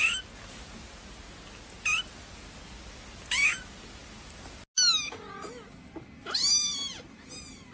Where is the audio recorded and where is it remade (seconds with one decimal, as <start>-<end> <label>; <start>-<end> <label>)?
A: 0.0-7.7 recorded